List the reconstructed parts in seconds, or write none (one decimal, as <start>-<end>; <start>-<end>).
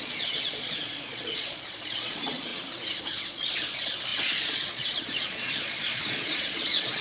0.0-2.5; 3.0-7.0